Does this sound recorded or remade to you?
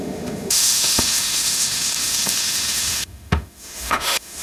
remade